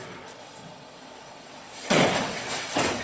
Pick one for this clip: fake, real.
fake